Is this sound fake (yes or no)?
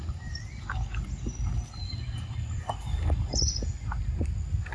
no